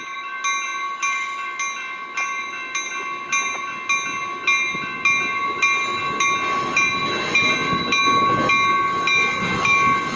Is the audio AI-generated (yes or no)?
no